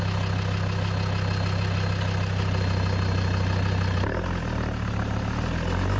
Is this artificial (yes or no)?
no